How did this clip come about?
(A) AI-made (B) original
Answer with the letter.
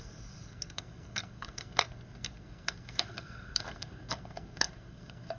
A